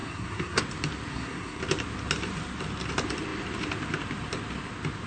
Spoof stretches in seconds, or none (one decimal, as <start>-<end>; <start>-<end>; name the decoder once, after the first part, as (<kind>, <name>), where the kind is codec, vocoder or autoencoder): 0.0-0.6 (codec, SNAC); 1.1-1.6